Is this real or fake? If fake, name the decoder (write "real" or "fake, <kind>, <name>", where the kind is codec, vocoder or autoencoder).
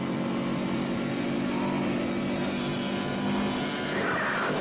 real